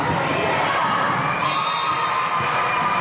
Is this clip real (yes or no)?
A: yes